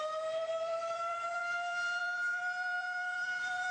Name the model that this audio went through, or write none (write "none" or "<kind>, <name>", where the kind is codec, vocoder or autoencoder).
vocoder, BigVGAN v2